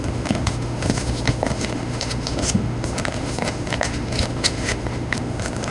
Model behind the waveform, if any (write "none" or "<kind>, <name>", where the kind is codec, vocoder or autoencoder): autoencoder, DAC-VAE